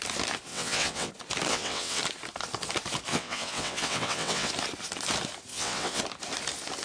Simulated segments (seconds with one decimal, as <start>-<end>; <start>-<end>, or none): 0.5-1.1; 1.5-2.0; 3.1-4.5; 5.5-6.0